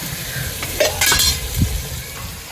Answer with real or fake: real